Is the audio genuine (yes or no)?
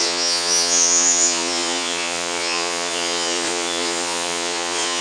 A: no